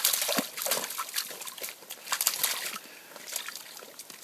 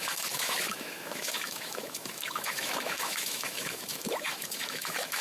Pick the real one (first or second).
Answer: first